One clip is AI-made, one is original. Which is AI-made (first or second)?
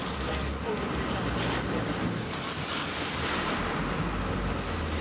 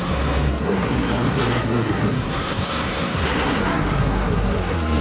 second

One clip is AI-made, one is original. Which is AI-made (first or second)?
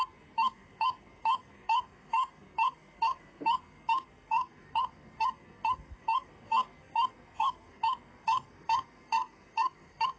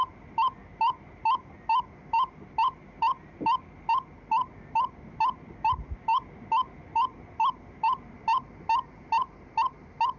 first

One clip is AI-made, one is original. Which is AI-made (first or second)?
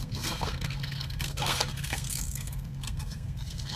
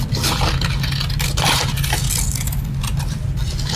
first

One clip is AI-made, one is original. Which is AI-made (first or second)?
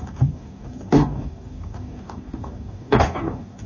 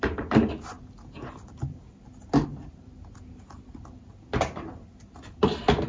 first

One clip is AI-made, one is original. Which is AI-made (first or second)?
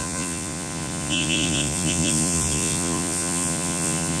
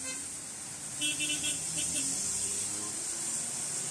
first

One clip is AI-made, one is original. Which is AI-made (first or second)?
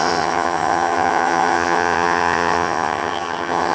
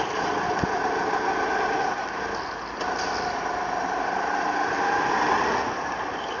first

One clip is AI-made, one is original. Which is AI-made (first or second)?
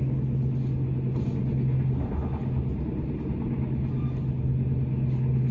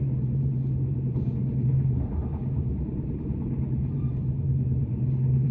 second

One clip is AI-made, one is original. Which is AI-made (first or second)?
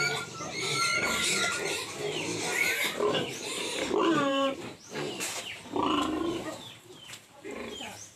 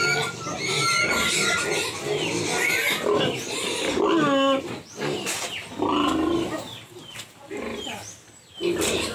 first